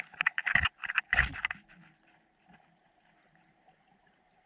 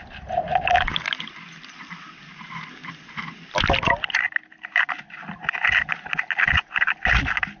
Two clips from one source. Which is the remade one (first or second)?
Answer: first